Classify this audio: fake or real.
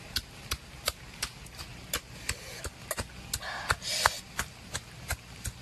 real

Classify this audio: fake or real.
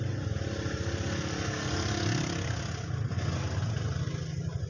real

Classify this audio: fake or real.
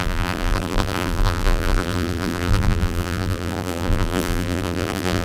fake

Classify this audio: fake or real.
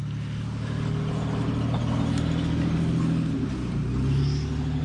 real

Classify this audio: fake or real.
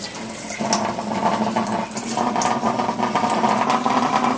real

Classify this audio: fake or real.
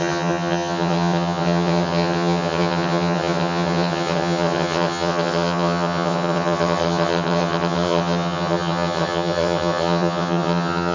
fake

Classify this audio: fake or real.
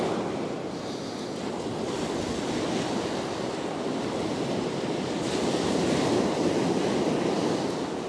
real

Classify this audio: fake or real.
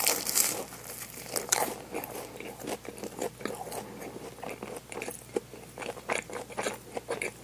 real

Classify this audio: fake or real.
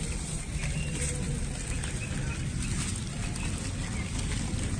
real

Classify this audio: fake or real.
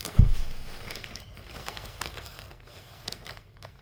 fake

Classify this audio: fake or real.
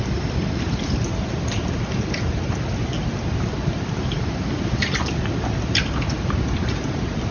real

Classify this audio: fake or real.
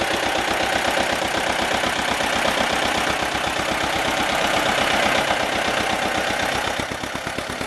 real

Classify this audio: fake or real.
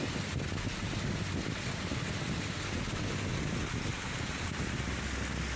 real